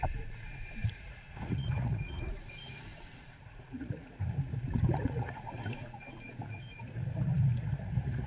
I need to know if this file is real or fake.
fake